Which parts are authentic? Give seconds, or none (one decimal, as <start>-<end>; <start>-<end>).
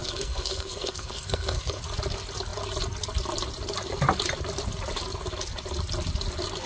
1.8-6.7